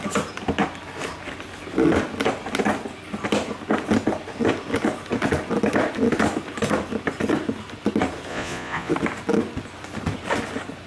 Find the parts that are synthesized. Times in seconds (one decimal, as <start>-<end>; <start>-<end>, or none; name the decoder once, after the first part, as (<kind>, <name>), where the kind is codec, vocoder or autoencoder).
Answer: 8.3-8.9 (vocoder, Vocos)